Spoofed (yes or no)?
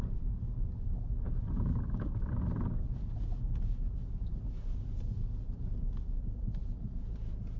no